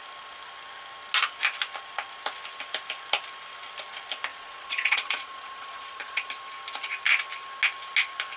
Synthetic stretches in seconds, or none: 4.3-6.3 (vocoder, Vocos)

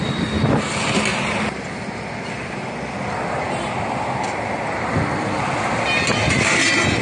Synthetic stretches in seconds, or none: none

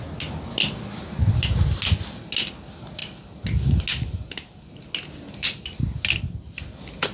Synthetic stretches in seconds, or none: none

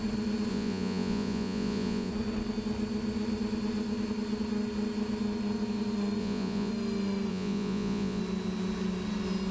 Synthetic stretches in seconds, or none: 0.5-2.1 (vocoder, Vocos); 6.2-6.7; 7.3-8.2

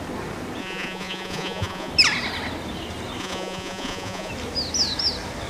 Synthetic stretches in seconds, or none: 0.6-1.9 (vocoder, Vocos); 3.2-4.3

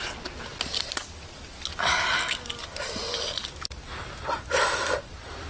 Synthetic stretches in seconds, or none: none

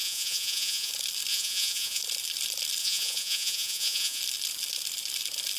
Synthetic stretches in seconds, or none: 0.0-0.9 (vocoder, Vocos); 1.3-2.0; 2.8-4.2